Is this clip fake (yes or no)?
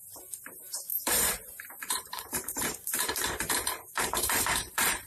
yes